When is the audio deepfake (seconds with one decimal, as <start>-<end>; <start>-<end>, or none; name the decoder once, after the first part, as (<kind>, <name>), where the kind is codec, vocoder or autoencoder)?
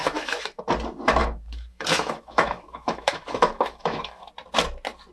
0.0-0.6 (autoencoder, DAC-VAE); 1.2-4.3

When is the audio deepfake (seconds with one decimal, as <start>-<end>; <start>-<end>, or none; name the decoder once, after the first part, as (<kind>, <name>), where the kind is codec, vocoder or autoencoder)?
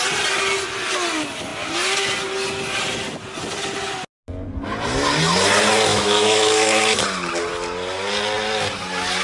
5.9-7.0 (autoencoder, DAC-VAE)